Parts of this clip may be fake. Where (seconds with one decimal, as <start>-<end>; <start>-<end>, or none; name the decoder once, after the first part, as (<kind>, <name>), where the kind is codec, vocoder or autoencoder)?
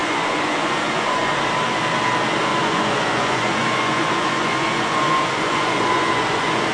0.0-1.3 (vocoder, Vocos); 2.5-6.7